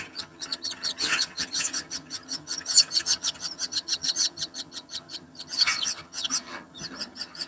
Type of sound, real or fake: fake